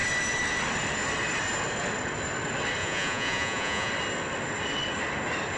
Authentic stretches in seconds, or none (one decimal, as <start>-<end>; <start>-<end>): 0.0-2.8; 3.9-5.6